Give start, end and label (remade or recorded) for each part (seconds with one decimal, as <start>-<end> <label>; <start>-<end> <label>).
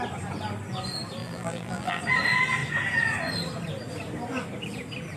0.0-1.2 recorded; 1.2-2.0 remade; 2.0-5.2 recorded